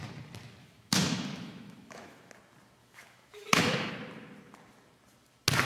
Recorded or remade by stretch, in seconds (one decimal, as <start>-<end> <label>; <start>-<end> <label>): 0.0-0.6 recorded; 0.6-2.3 remade; 2.3-2.8 recorded; 2.8-3.9 remade; 3.9-5.7 recorded